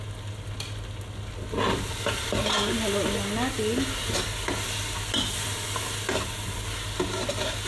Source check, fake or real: real